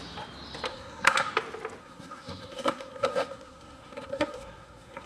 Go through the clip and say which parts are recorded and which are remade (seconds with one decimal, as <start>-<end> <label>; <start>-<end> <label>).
0.0-0.7 recorded; 0.7-1.3 remade; 1.3-1.8 recorded; 1.8-5.1 remade

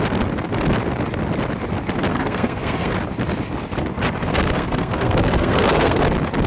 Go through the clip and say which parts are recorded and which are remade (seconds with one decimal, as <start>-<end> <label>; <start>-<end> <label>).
0.0-2.1 recorded; 2.1-2.9 remade; 2.9-4.3 recorded; 4.3-6.0 remade; 6.0-6.5 recorded

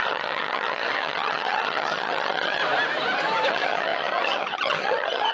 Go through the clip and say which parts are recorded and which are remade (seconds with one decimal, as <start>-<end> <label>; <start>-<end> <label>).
0.0-2.6 remade; 2.6-3.5 recorded; 3.5-5.3 remade

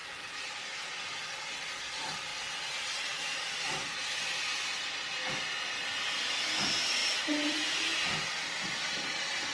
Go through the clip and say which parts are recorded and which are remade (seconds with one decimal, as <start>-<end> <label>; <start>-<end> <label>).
0.0-1.1 remade; 1.1-7.0 recorded; 7.0-7.7 remade; 7.7-9.5 recorded

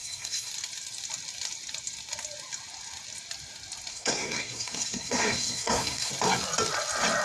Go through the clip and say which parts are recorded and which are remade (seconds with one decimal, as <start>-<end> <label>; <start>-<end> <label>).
0.0-0.5 remade; 0.5-3.9 recorded; 3.9-6.1 remade; 6.1-7.2 recorded

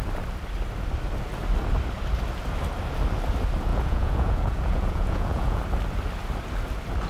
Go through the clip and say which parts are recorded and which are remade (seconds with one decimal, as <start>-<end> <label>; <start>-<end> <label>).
0.0-3.7 recorded; 3.7-5.6 remade; 5.6-7.1 recorded